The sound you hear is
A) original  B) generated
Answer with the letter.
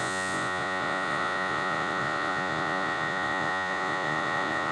B